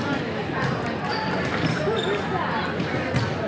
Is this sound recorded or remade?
recorded